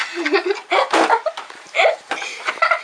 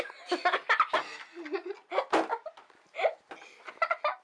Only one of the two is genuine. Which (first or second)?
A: second